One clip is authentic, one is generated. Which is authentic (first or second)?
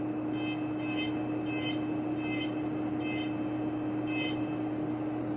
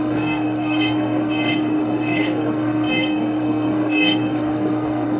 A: first